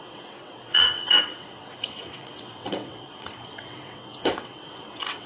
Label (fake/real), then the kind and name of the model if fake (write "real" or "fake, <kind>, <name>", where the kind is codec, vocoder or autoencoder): fake, vocoder, WaveNeXt